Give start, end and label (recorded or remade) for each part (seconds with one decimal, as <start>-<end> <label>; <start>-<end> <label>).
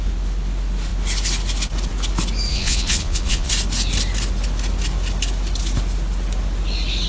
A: 0.0-2.5 recorded; 2.5-3.5 remade; 3.5-7.1 recorded